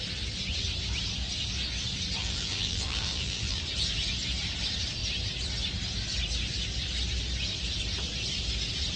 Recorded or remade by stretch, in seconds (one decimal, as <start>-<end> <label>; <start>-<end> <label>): 0.0-2.2 recorded; 2.2-3.6 remade; 3.6-9.0 recorded